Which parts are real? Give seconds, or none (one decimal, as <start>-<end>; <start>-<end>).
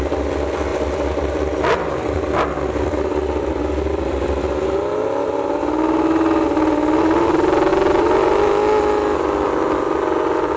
0.0-10.6